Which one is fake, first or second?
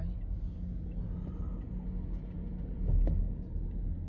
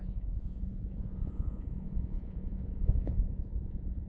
second